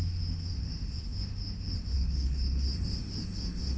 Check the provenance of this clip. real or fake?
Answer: fake